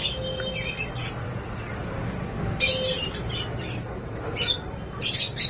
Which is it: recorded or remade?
recorded